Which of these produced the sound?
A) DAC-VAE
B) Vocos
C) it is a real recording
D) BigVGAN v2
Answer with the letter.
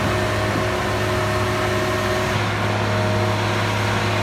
C